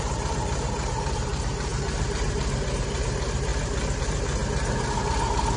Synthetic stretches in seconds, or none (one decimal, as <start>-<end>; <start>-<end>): 0.0-3.5; 4.0-4.4